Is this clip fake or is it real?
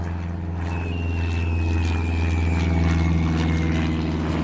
real